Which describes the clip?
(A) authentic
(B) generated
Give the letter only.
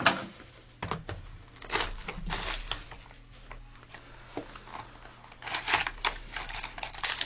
A